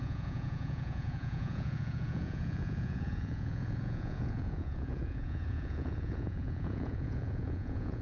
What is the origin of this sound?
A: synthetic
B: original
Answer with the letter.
A